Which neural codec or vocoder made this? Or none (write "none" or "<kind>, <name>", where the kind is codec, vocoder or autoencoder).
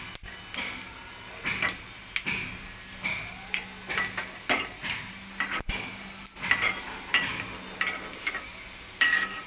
none